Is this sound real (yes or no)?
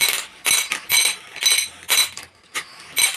yes